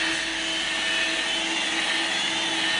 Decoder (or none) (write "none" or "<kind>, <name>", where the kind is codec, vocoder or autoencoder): none